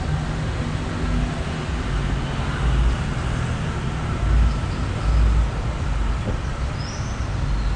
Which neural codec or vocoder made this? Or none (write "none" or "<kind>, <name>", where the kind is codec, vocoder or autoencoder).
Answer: none